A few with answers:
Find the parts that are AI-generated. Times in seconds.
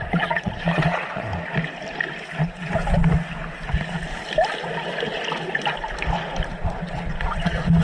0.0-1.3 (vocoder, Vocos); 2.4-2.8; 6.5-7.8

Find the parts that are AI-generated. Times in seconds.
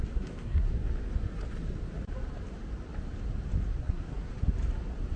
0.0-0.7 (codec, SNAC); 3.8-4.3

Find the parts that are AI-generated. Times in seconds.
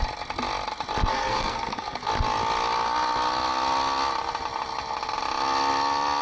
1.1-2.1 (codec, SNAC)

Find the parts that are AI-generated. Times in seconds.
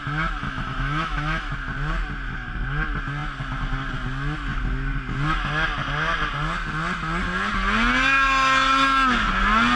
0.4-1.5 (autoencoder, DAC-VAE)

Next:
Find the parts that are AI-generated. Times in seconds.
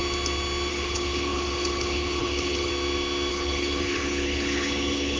0.7-2.7 (codec, HILCodec); 3.3-5.2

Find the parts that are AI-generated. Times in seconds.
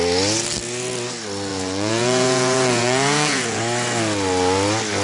1.5-3.6 (vocoder, Vocos)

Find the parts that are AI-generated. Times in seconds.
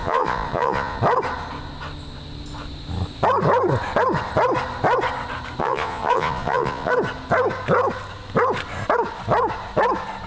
0.0-1.0 (vocoder, Vocos); 5.6-6.9